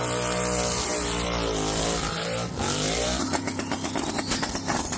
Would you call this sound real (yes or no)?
yes